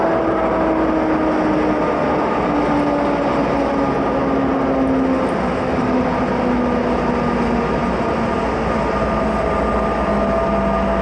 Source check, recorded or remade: recorded